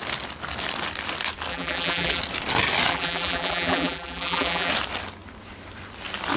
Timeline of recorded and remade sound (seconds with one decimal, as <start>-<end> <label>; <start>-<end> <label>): 0.0-1.5 recorded; 1.5-2.2 remade; 2.2-2.9 recorded; 2.9-4.7 remade; 4.7-6.4 recorded